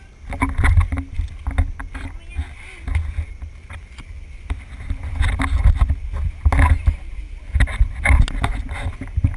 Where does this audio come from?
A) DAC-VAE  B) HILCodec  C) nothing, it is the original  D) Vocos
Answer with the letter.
C